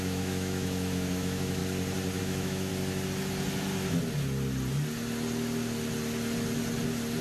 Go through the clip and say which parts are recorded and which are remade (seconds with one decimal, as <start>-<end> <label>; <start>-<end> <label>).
0.0-1.6 remade; 1.6-2.2 recorded; 2.2-2.7 remade; 2.7-7.2 recorded